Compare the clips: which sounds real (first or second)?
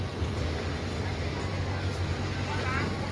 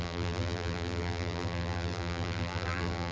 first